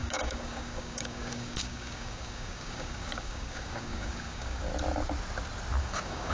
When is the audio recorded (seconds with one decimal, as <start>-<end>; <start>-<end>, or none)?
4.7-5.8